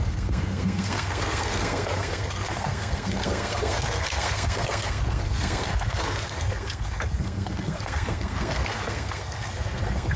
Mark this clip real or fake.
fake